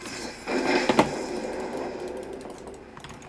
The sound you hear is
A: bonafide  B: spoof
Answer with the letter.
A